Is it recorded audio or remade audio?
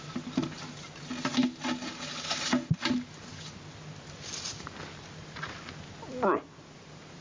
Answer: recorded